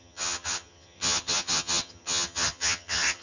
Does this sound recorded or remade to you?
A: remade